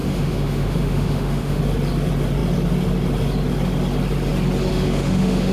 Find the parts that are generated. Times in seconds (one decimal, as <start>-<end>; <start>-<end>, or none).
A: 0.0-1.6; 4.7-5.5

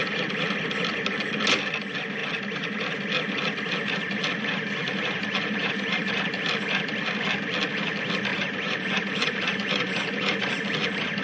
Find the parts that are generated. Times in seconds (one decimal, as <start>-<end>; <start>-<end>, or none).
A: 4.8-6.3; 8.3-10.5

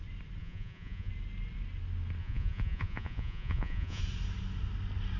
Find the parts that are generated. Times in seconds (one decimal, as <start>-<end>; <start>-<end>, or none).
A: 0.4-1.1; 2.2-4.0

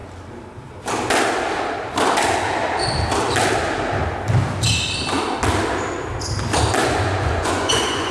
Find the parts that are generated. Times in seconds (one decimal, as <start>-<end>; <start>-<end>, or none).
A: 6.8-8.1

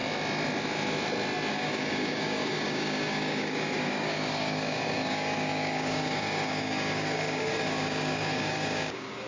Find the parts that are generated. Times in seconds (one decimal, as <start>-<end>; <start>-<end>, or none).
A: 1.5-9.3

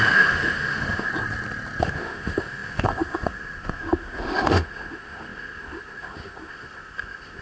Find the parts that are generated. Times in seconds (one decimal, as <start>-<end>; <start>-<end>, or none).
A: 0.0-1.1; 1.8-7.4

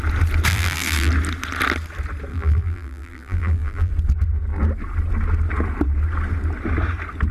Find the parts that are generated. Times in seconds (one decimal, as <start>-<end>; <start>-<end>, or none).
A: 0.5-1.1; 2.3-3.9

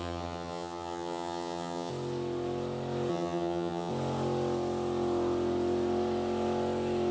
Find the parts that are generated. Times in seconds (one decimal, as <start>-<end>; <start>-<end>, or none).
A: 0.0-1.9; 3.1-3.9